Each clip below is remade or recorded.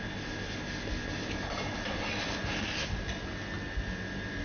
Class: recorded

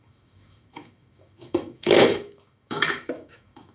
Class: remade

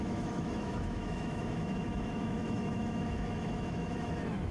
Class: remade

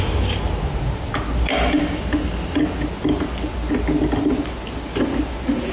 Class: recorded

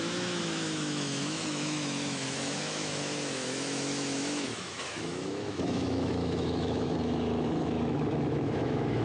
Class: remade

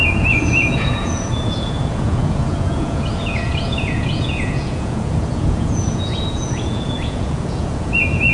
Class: remade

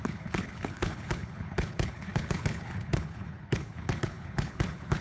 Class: remade